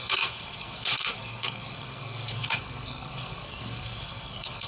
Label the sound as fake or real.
fake